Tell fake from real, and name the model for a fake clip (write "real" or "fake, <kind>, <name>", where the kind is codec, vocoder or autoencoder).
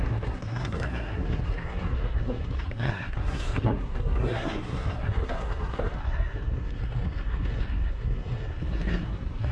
fake, codec, SNAC